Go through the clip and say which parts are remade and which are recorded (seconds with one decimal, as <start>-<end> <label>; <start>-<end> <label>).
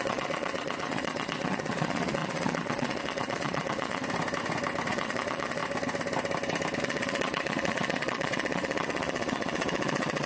0.0-4.0 remade; 4.0-4.9 recorded; 4.9-5.6 remade; 5.6-6.8 recorded; 6.8-10.3 remade